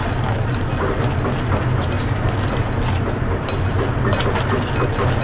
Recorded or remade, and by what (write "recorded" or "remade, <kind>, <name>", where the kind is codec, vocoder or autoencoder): recorded